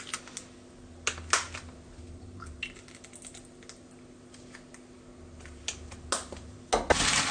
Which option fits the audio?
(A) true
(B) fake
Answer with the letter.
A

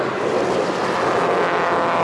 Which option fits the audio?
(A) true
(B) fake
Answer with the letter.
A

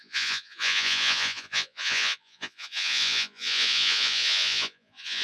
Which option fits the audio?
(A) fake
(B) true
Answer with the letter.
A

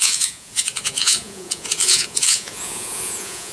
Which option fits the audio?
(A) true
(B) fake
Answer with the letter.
B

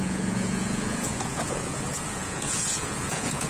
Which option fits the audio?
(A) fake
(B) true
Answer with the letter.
A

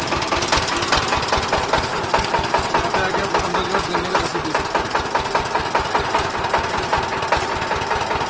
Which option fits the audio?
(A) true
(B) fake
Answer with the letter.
A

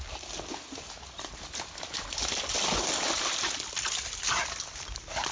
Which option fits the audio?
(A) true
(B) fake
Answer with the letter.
A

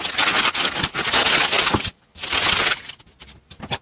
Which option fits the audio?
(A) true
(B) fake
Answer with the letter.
A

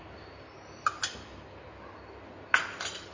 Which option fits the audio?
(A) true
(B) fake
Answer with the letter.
A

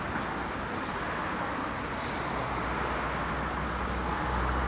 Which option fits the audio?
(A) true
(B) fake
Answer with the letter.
A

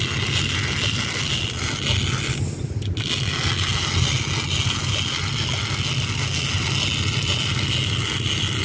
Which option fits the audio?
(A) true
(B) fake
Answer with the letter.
A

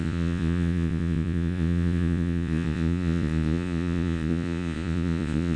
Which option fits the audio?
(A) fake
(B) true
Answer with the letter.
A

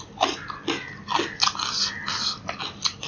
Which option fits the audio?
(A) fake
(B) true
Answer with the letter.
B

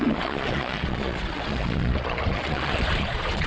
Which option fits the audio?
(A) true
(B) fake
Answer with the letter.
B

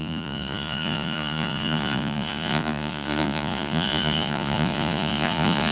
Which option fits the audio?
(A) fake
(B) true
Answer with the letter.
A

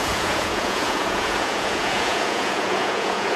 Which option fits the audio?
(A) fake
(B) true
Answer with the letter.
A